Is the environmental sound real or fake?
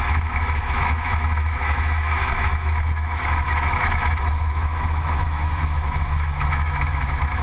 fake